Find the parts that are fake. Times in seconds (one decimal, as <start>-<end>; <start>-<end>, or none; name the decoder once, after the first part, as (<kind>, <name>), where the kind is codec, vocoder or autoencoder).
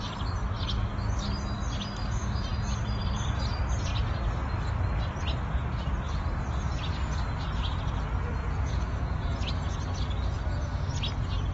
8.4-9.5 (vocoder, Vocos)